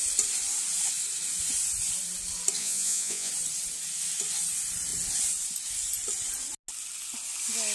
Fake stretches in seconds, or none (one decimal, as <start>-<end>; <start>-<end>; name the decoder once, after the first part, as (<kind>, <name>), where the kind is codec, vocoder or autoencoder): 2.6-3.3 (vocoder, Vocos)